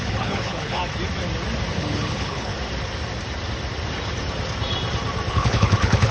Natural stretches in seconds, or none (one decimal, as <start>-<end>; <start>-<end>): 0.8-1.8; 2.5-5.3